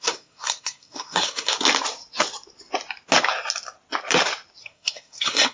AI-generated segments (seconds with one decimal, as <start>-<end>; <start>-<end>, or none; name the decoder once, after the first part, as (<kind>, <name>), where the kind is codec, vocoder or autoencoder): 0.0-1.5 (codec, SNAC); 4.6-5.5